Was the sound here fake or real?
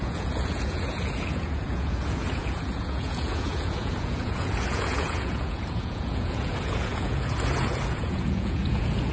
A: fake